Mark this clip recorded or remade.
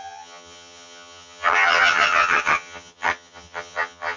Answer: remade